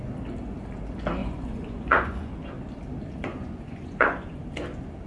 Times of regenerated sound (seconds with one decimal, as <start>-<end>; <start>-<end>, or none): 1.2-2.3; 3.3-4.4